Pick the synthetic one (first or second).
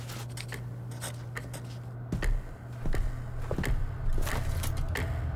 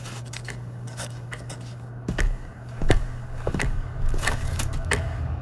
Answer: second